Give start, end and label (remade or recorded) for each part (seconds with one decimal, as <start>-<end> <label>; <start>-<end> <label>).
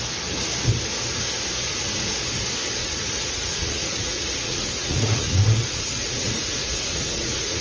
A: 0.0-2.8 recorded; 2.8-7.6 remade